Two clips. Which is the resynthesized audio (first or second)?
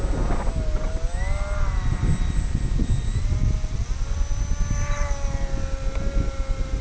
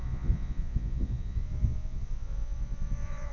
second